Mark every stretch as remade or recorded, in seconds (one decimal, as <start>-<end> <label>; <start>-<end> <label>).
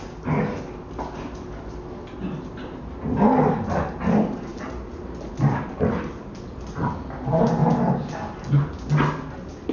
0.0-9.7 recorded